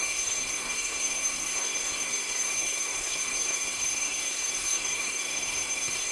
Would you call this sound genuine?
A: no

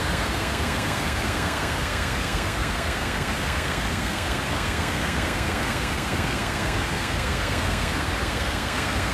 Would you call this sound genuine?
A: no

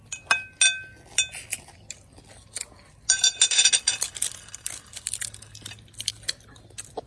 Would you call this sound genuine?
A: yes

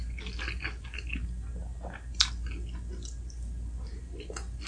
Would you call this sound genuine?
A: yes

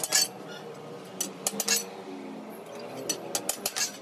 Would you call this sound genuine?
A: yes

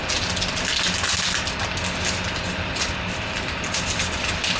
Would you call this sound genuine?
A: yes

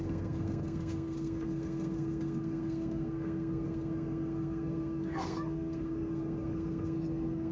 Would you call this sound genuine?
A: no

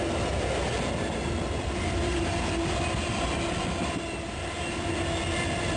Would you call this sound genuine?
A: yes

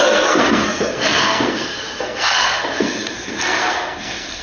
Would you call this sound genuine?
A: no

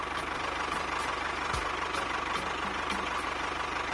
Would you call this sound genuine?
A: yes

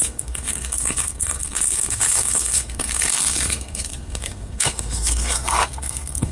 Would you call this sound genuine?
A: no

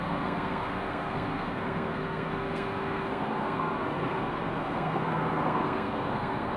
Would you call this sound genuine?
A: no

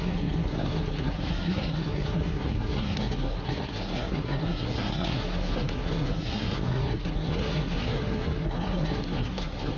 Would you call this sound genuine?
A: no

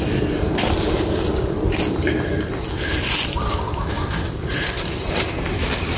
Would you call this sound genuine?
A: yes